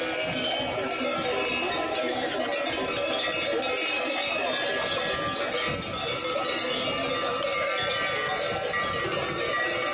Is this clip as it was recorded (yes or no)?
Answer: yes